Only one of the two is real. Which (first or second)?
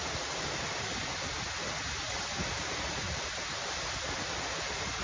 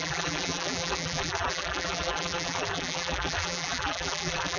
first